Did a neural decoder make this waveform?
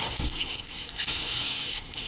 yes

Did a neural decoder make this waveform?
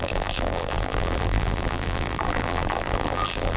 yes